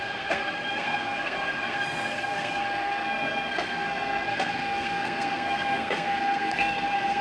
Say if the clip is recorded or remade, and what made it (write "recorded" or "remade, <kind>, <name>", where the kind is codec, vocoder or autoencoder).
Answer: remade, codec, SNAC